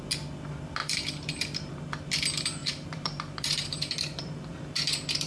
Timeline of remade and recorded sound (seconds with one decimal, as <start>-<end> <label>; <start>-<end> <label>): 0.0-0.8 recorded; 0.8-1.7 remade; 1.7-2.6 recorded; 2.6-4.6 remade; 4.6-5.3 recorded